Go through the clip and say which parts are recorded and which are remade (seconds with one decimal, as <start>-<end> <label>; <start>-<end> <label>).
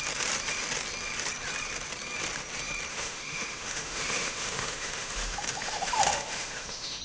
0.0-2.9 recorded; 2.9-7.0 remade